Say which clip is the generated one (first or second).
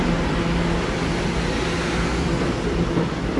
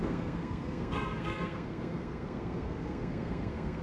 second